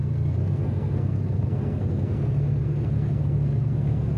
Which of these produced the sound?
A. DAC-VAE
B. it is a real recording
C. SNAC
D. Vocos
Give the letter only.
C